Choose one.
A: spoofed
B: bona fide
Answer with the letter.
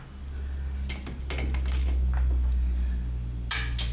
B